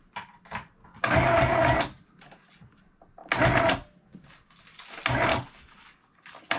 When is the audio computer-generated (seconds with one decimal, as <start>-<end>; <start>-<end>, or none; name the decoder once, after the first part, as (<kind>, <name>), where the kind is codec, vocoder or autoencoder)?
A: 0.8-1.8 (codec, DAC); 5.3-6.6